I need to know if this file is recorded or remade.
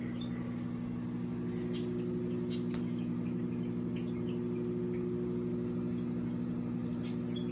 recorded